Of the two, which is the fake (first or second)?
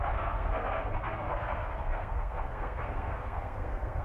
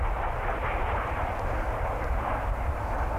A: first